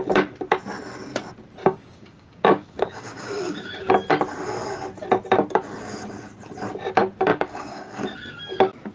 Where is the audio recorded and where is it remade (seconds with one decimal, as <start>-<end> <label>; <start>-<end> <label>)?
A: 0.0-1.6 recorded; 1.6-3.9 remade; 3.9-7.3 recorded; 7.3-8.0 remade; 8.0-8.9 recorded